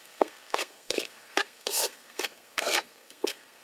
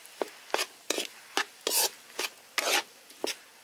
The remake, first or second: first